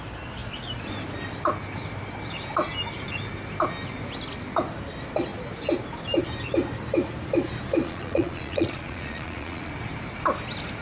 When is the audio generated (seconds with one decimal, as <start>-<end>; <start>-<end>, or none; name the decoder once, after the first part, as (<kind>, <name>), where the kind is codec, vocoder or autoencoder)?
7.8-9.7 (vocoder, Vocos)